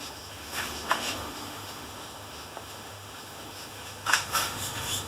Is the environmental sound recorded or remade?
remade